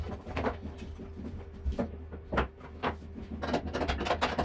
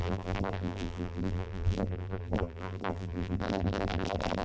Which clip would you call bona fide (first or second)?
first